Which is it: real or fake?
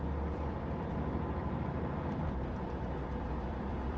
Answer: fake